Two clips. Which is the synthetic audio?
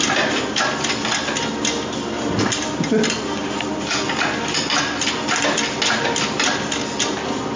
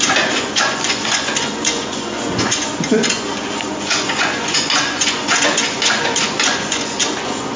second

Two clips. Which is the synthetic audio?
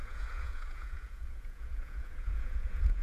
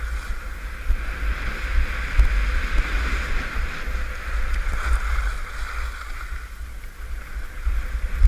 first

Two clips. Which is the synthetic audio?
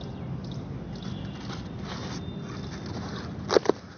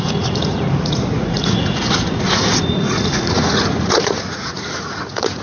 second